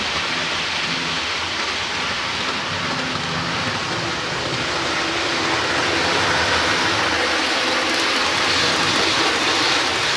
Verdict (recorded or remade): recorded